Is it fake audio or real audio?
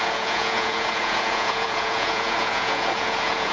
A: fake